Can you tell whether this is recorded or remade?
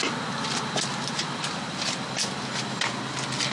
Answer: recorded